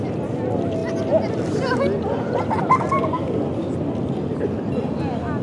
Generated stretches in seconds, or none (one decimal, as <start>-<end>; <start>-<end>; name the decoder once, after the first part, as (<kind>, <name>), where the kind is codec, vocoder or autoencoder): none